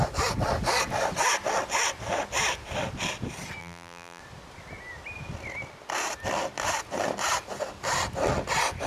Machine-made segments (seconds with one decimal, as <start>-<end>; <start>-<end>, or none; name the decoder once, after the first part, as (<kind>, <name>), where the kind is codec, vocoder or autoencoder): 3.6-4.2 (vocoder, BigVGAN v2)

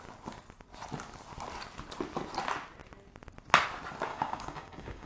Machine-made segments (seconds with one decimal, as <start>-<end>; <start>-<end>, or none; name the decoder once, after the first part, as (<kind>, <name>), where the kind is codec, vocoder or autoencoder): 4.1-5.1 (codec, DAC)

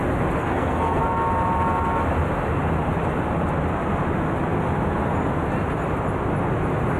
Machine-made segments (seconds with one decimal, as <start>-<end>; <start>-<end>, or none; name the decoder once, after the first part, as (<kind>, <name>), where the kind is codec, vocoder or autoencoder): 0.4-1.0 (codec, SNAC)

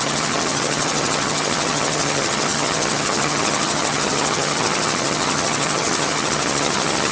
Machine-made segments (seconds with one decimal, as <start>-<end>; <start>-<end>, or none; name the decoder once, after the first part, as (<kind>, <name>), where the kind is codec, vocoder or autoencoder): 0.0-7.1 (vocoder, HiFi-GAN)

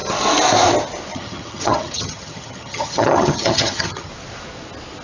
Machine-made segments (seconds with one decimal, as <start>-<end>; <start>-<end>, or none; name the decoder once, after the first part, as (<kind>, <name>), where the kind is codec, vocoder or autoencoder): 1.1-4.1 (vocoder, HiFi-GAN)

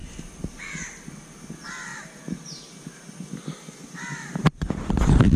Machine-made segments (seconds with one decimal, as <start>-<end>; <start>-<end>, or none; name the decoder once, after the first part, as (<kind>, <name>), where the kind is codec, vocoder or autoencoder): none

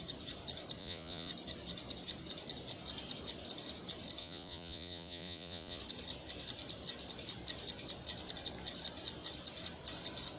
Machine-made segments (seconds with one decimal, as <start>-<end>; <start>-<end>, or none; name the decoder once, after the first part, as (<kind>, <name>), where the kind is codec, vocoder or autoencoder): 0.8-1.3 (vocoder, Vocos); 4.2-5.8